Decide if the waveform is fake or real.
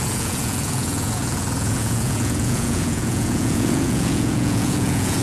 fake